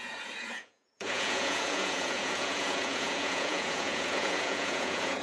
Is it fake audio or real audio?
fake